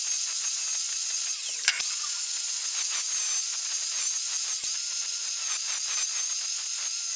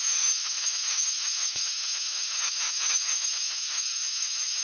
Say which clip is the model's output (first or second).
second